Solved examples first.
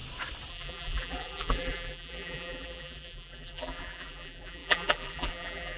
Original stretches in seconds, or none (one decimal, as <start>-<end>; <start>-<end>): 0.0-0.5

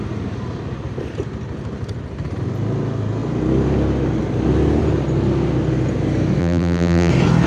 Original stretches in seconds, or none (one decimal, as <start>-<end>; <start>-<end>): 0.0-6.4; 7.1-7.5

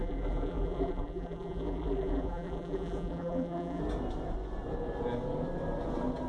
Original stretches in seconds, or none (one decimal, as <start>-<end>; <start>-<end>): 3.8-6.3